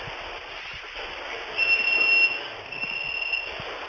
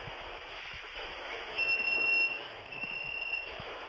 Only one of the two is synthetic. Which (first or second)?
second